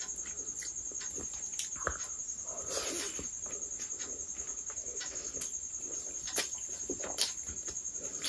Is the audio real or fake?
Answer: real